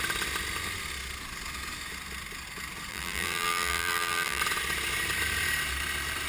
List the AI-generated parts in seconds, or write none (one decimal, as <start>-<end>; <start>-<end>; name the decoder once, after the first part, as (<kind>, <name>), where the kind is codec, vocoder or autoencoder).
2.9-4.4 (vocoder, BigVGAN v2)